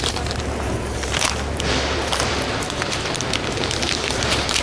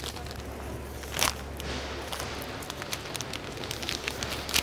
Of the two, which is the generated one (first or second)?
first